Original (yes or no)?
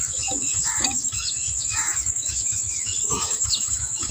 no